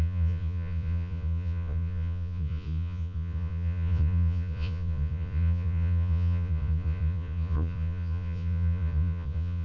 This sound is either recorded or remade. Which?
remade